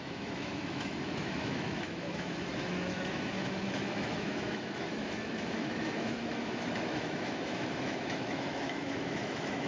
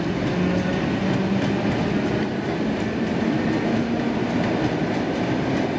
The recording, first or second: second